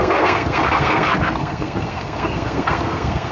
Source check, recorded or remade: remade